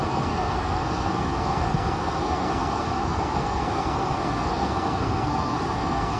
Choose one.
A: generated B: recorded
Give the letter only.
A